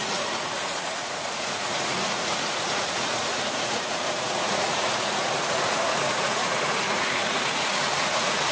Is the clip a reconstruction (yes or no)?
yes